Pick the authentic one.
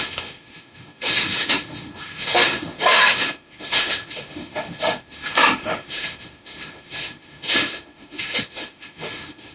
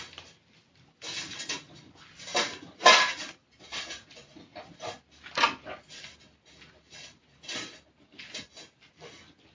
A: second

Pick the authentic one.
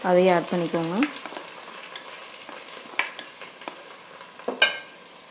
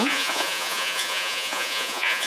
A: first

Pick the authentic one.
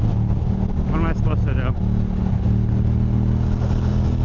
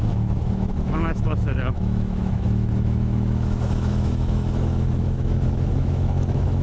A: first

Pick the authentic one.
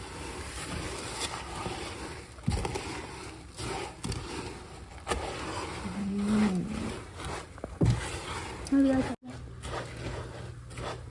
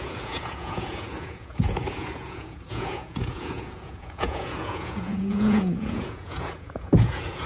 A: first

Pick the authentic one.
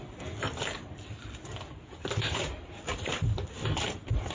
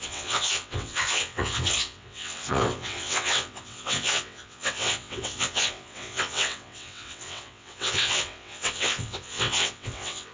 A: first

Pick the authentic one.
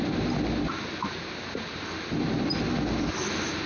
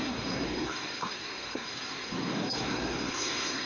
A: first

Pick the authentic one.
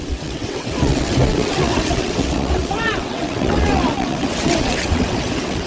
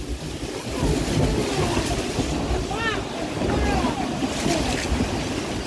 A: second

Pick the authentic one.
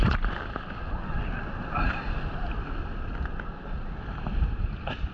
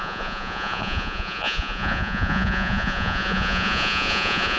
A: first